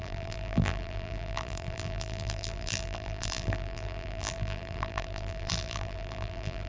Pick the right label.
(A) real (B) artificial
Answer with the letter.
B